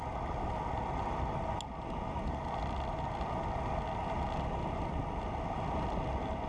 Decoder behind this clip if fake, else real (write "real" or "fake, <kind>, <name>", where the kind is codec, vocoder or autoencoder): real